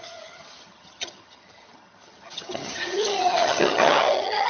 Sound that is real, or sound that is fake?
fake